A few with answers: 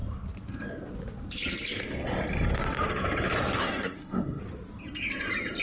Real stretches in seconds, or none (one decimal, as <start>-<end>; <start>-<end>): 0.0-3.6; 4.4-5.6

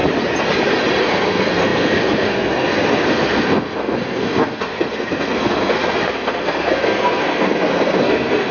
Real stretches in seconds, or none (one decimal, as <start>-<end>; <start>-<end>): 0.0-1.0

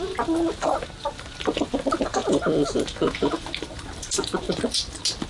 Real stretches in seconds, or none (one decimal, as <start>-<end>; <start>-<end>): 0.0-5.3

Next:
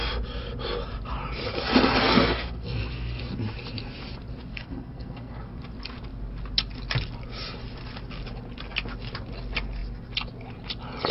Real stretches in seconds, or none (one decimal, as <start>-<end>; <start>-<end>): 0.0-2.0; 3.2-4.5; 5.6-11.1

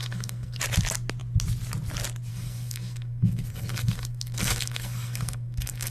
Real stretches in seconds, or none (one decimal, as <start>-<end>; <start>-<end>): 0.6-2.3

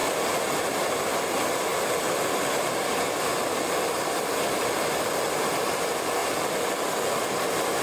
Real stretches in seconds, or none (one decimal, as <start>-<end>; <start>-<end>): 0.0-7.8